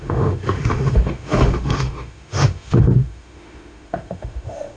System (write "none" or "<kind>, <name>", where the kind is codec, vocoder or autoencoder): autoencoder, DAC-VAE